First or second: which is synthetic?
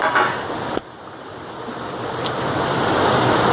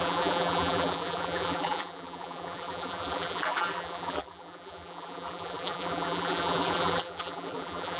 second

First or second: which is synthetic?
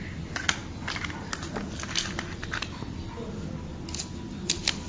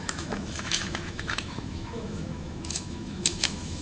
second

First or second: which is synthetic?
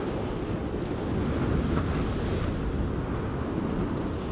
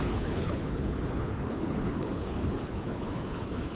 second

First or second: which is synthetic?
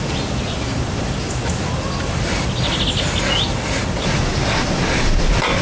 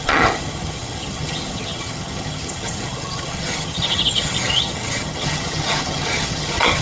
second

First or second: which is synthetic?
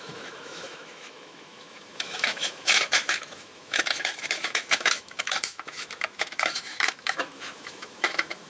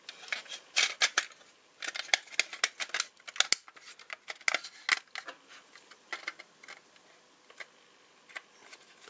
first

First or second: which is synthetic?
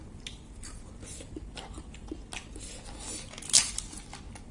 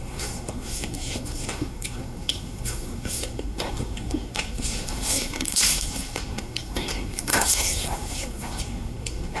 second